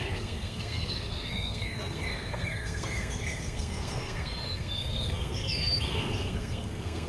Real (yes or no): no